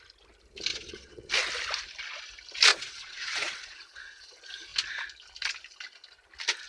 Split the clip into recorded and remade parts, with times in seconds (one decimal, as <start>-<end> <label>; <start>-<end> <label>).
0.0-0.7 recorded; 0.7-1.3 remade; 1.3-2.7 recorded; 2.7-4.3 remade; 4.3-6.7 recorded